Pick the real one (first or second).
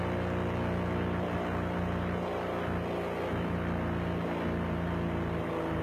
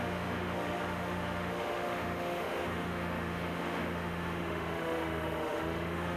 first